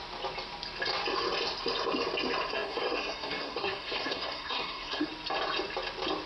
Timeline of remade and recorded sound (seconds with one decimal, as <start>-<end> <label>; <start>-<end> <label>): 0.0-2.5 recorded; 2.5-5.1 remade; 5.1-6.3 recorded